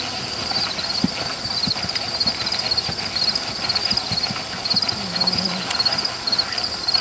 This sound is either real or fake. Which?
real